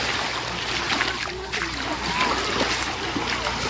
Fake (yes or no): no